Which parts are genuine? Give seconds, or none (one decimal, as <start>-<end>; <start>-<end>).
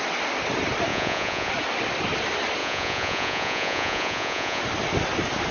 0.0-0.9; 1.5-2.6; 4.6-5.5